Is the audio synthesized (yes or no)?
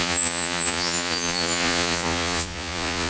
yes